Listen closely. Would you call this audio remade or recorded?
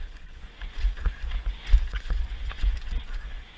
remade